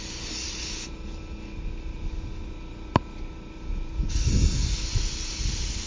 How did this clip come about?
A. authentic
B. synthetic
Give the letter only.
A